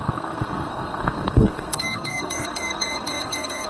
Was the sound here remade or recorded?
remade